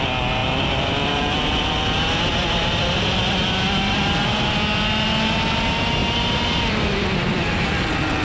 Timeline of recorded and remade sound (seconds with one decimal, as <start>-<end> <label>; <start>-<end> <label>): 0.0-6.0 recorded; 6.0-6.6 remade; 6.6-8.2 recorded